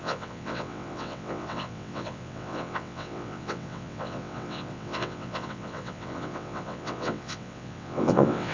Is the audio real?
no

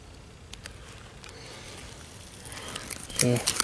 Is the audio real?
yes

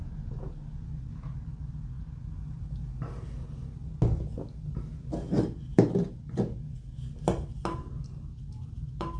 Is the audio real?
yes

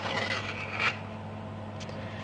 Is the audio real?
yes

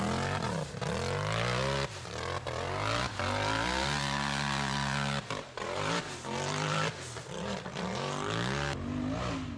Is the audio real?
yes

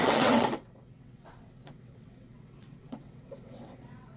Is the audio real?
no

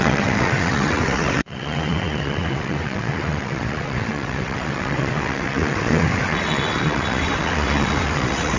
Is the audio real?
no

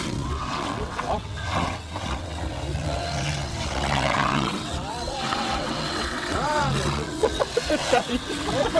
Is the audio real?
no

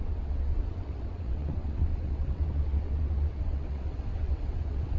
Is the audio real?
no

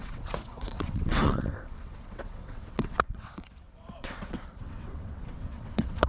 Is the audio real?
no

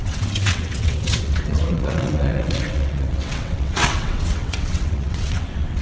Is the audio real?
no